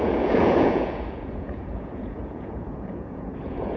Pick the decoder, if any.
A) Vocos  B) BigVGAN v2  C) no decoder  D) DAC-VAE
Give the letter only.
A